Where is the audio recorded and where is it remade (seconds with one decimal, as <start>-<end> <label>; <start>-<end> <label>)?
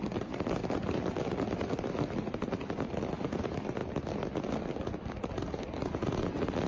0.0-6.7 recorded